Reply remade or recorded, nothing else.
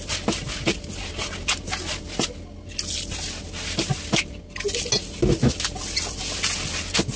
recorded